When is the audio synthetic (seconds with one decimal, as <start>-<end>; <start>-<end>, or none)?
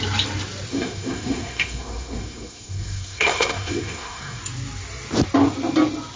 0.7-4.4